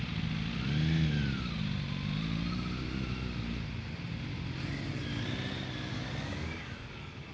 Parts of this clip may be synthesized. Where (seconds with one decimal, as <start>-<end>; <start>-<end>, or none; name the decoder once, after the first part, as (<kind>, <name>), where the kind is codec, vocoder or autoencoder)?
5.9-7.3 (codec, DAC)